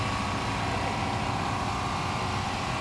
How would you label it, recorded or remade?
recorded